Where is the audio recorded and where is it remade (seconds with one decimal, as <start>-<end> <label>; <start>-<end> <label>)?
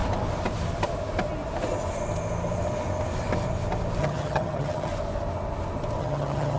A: 0.0-4.0 recorded; 4.0-4.9 remade; 4.9-6.0 recorded; 6.0-6.6 remade